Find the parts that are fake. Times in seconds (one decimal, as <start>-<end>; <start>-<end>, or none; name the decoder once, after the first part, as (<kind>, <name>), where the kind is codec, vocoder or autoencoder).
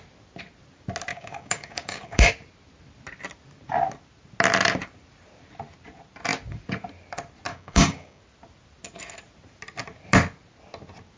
1.1-2.3 (codec, DAC); 7.5-8.2